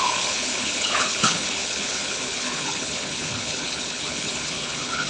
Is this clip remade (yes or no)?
yes